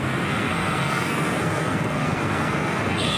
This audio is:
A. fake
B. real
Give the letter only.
A